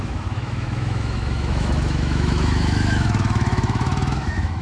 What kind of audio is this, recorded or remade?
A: remade